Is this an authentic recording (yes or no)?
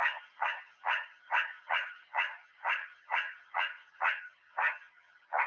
no